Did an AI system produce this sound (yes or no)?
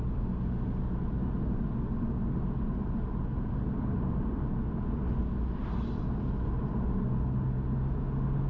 no